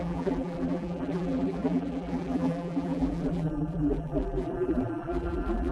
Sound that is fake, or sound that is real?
fake